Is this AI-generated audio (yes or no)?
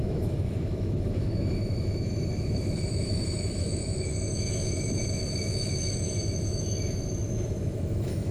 yes